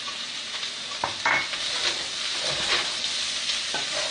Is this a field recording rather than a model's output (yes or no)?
yes